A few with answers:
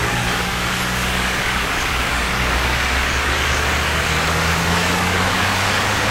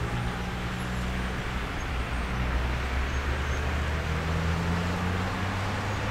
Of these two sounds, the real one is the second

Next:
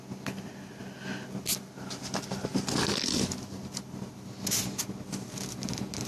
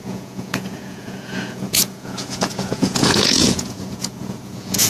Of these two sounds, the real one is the first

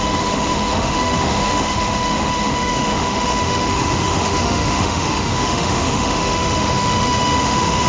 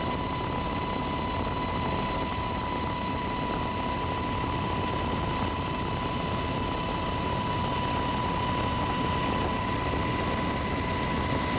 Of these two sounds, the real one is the second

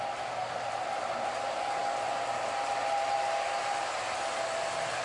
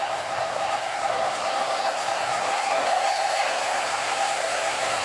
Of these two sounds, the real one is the first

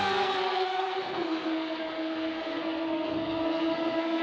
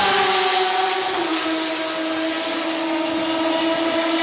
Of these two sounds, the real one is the second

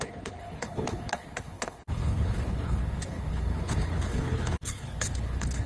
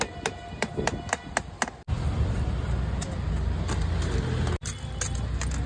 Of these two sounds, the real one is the second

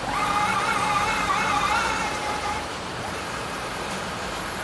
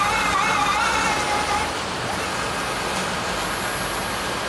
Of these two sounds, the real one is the second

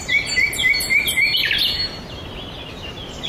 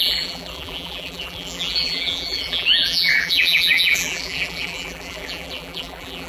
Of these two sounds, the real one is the first